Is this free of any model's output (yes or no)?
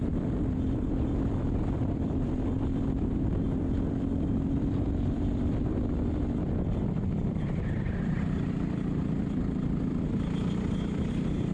no